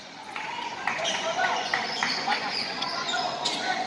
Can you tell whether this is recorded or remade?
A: remade